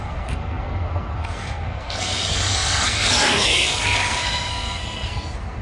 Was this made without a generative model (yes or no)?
no